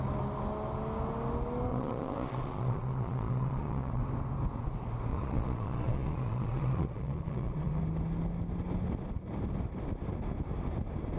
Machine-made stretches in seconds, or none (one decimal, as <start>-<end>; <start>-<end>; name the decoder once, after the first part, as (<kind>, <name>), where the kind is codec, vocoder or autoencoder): 1.7-4.0 (vocoder, Vocos); 5.1-7.8